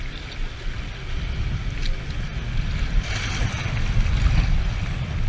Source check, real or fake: real